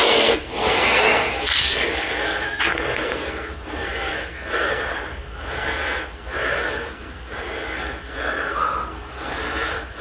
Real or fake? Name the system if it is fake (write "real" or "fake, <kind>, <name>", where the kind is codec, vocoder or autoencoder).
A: fake, codec, SNAC